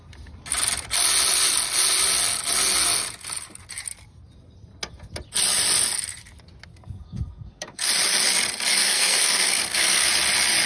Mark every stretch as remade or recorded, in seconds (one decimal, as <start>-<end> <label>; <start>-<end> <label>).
0.0-6.7 recorded; 6.7-7.9 remade; 7.9-8.7 recorded; 8.7-10.1 remade; 10.1-10.7 recorded